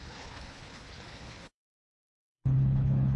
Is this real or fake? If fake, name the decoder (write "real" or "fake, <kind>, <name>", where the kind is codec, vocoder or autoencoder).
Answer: fake, codec, HILCodec